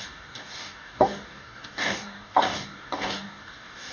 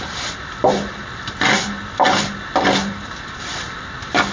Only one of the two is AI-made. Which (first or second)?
first